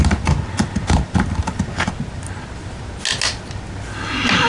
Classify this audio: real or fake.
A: real